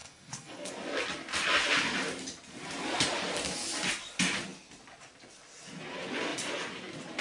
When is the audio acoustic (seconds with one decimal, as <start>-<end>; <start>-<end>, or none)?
0.7-7.2